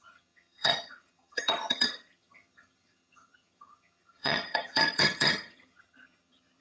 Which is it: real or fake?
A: fake